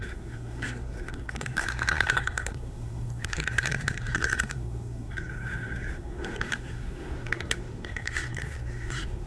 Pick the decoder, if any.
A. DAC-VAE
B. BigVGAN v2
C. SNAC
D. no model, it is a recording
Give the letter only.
C